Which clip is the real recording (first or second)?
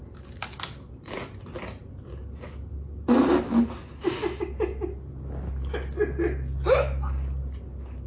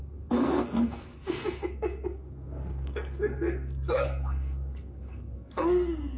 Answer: first